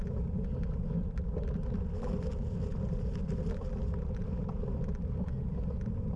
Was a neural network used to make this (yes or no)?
no